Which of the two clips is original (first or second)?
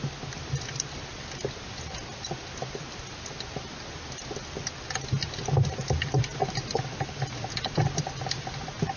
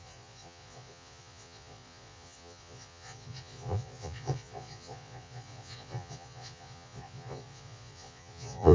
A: first